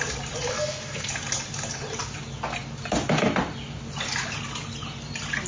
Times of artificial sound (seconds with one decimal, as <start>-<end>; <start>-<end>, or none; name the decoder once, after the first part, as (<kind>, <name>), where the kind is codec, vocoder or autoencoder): 0.5-1.1 (codec, SNAC)